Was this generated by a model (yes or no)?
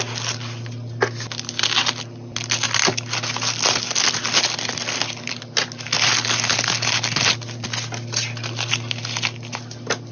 no